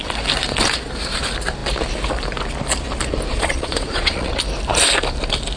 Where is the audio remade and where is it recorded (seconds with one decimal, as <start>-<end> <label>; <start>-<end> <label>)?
0.0-3.3 recorded; 3.3-4.3 remade; 4.3-5.6 recorded